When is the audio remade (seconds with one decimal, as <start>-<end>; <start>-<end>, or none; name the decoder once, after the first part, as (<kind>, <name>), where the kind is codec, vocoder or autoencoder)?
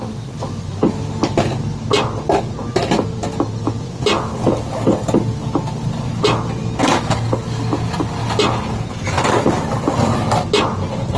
none